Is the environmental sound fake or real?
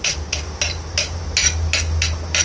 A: real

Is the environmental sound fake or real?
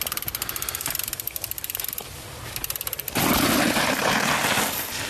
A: fake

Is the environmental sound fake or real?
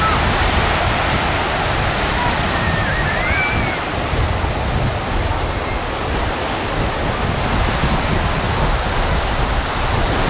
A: real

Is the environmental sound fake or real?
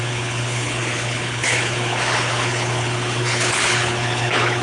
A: fake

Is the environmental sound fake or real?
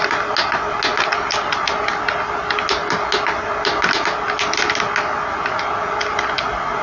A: real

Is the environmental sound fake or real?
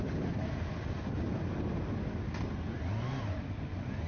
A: real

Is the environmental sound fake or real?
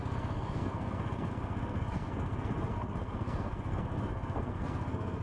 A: fake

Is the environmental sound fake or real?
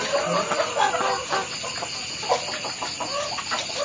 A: real